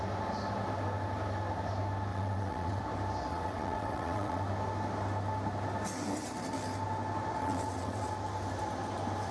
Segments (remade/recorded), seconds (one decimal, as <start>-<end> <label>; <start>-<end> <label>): 0.0-2.1 recorded; 2.1-2.8 remade; 2.8-3.3 recorded; 3.3-4.4 remade; 4.4-7.4 recorded; 7.4-8.1 remade; 8.1-9.3 recorded